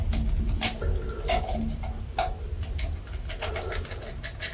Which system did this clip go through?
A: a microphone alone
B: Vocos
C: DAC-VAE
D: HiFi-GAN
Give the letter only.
A